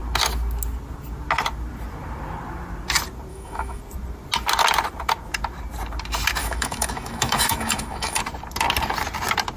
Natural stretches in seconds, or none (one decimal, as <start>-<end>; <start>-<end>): 0.0-3.3; 3.8-6.4; 8.2-9.6